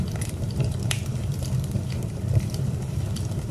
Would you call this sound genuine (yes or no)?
no